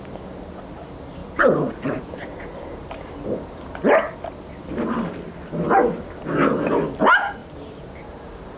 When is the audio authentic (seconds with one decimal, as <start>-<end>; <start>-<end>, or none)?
0.0-1.2; 3.1-8.6